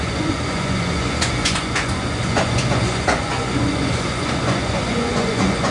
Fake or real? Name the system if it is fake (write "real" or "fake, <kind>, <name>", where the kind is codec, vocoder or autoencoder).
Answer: fake, vocoder, Vocos